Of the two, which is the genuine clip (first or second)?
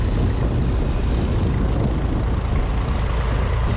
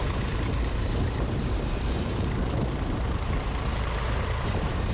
first